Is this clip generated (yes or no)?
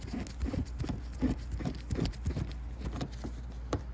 no